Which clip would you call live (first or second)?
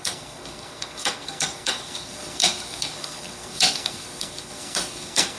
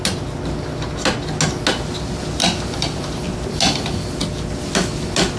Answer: second